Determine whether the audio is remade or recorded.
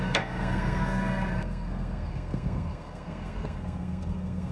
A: remade